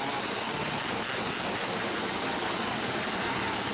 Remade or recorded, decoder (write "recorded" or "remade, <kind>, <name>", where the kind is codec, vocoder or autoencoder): recorded